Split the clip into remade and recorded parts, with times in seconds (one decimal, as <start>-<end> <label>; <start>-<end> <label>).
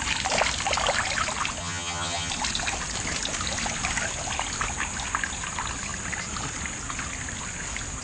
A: 0.0-1.6 recorded; 1.6-2.3 remade; 2.3-8.0 recorded